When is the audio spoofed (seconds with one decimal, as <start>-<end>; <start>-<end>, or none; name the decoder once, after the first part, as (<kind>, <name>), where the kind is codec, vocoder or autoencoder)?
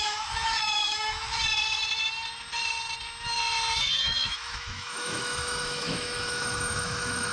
0.0-1.4 (autoencoder, DAC-VAE); 3.8-7.3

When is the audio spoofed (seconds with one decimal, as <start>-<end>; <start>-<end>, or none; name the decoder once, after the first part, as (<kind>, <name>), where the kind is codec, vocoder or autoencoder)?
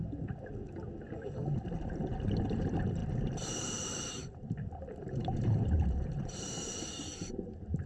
3.0-7.9 (vocoder, BigVGAN v2)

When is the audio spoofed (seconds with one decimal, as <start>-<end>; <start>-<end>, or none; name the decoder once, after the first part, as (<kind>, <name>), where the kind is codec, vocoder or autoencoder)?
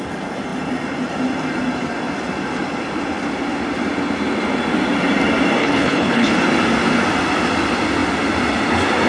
5.6-6.3 (codec, HILCodec)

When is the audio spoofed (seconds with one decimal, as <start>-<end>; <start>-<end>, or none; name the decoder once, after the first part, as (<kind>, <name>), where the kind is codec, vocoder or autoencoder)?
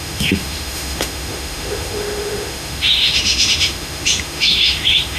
0.0-5.2 (autoencoder, DAC-VAE)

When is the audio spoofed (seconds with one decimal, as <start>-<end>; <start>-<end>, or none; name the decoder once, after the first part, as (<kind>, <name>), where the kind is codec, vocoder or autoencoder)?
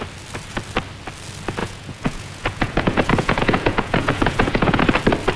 1.6-4.8 (vocoder, Vocos)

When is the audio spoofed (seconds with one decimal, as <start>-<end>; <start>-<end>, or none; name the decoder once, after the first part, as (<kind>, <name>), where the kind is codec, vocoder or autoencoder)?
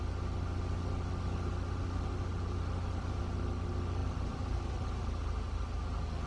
2.3-3.2 (vocoder, BigVGAN v2); 4.0-4.7